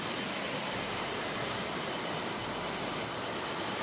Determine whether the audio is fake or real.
real